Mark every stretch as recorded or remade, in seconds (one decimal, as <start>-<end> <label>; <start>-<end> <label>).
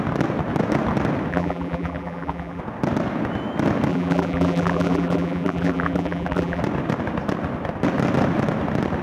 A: 0.0-1.3 recorded; 1.3-2.6 remade; 2.6-3.9 recorded; 3.9-6.6 remade; 6.6-9.0 recorded